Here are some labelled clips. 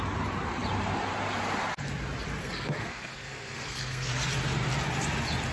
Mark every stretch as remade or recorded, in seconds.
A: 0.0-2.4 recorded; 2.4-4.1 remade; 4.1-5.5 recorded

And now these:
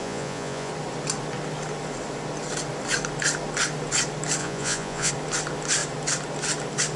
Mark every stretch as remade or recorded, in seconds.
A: 0.0-0.7 remade; 0.7-4.4 recorded; 4.4-5.1 remade; 5.1-7.0 recorded

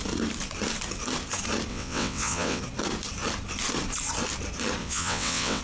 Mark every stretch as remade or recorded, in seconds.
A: 0.0-1.7 recorded; 1.7-2.6 remade; 2.6-4.8 recorded; 4.8-5.6 remade